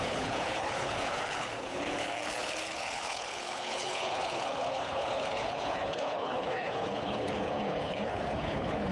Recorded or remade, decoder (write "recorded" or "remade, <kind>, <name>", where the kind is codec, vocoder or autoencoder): remade, codec, HILCodec